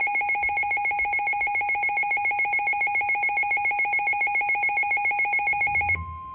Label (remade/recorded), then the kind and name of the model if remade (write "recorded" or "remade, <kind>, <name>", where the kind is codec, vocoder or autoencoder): recorded